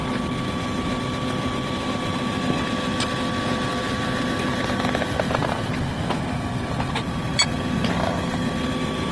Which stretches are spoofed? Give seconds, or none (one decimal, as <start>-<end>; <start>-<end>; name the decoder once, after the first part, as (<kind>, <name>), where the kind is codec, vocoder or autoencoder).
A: 0.0-1.9 (vocoder, BigVGAN v2); 3.7-9.1